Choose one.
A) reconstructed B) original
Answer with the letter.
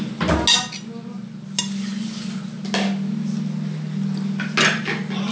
B